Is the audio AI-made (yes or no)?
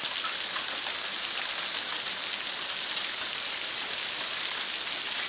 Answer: no